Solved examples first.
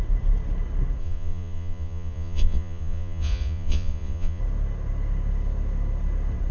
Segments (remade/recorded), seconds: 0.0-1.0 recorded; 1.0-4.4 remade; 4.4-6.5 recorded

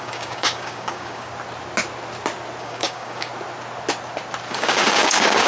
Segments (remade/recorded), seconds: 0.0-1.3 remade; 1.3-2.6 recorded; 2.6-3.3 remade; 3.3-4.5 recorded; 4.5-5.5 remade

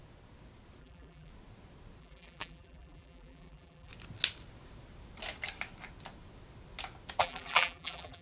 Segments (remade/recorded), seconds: 0.0-0.8 recorded; 0.8-1.3 remade; 1.3-2.0 recorded; 2.0-3.9 remade; 3.9-7.2 recorded; 7.2-8.2 remade

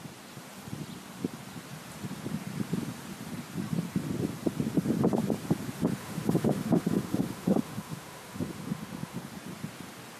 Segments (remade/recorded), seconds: 0.0-6.0 recorded; 6.0-9.2 remade; 9.2-10.2 recorded

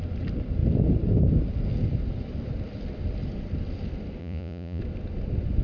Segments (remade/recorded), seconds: 0.0-4.2 recorded; 4.2-4.8 remade; 4.8-5.6 recorded

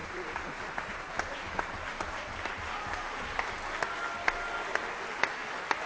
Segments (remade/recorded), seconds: 0.0-3.5 remade; 3.5-5.9 recorded